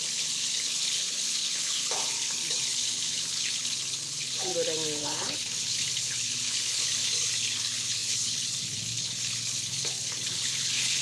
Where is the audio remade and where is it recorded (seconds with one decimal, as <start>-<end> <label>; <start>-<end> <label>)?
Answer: 0.0-4.5 remade; 4.5-5.0 recorded; 5.0-11.0 remade